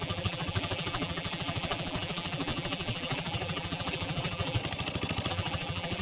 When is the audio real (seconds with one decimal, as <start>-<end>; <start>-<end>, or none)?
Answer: 4.6-5.3